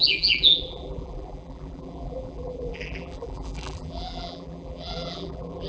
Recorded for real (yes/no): no